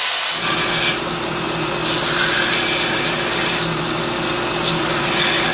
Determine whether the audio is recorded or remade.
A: recorded